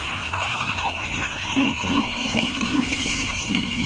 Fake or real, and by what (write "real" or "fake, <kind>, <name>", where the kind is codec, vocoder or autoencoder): fake, codec, SNAC